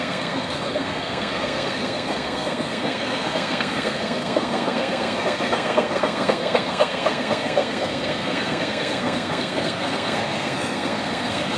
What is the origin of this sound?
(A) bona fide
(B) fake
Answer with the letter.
B